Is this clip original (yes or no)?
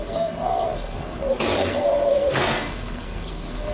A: no